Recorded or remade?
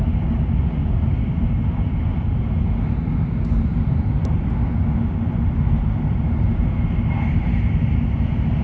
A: recorded